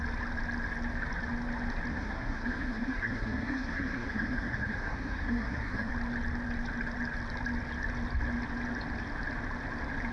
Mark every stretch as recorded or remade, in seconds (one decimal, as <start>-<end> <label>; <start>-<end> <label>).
0.0-1.9 recorded; 1.9-5.9 remade; 5.9-10.1 recorded